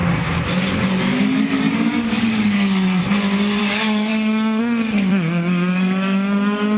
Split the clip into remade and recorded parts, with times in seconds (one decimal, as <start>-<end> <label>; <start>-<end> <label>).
0.0-1.4 recorded; 1.4-3.0 remade; 3.0-3.6 recorded; 3.6-6.8 remade